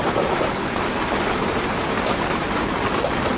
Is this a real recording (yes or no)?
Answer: yes